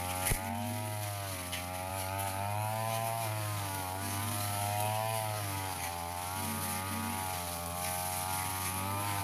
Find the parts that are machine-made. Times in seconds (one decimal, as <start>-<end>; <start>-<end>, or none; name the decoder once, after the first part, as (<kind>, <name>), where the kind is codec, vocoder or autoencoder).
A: 1.9-5.9 (codec, DAC); 8.5-9.2